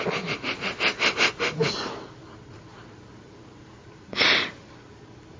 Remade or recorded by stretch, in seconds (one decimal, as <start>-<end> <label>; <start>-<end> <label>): 0.0-2.7 recorded; 2.7-5.0 remade; 5.0-5.4 recorded